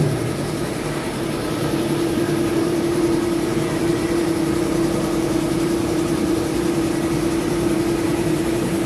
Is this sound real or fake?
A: fake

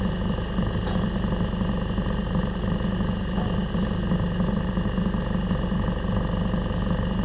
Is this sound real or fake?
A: real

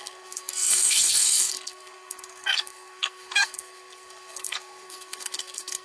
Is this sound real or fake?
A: fake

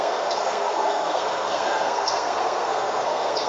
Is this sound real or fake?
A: fake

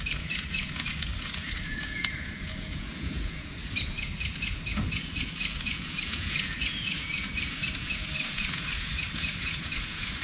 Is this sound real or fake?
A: fake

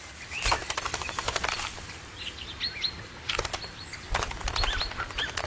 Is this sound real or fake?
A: real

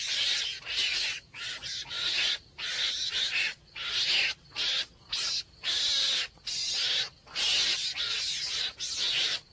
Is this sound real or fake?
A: real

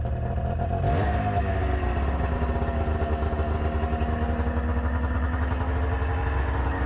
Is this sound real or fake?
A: real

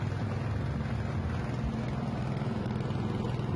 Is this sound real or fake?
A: real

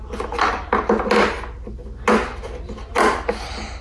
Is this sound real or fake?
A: real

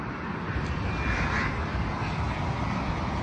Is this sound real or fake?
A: real